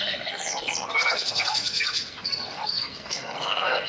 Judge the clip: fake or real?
fake